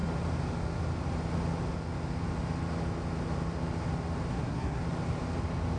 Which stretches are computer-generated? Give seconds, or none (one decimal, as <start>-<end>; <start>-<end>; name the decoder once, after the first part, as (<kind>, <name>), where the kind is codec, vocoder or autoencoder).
4.3-4.8 (codec, SNAC)